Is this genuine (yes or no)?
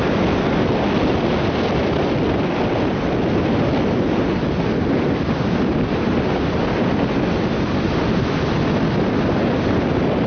yes